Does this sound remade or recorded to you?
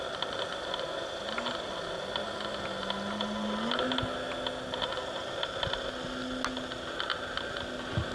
recorded